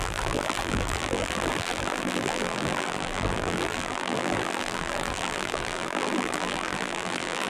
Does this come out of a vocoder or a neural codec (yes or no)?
yes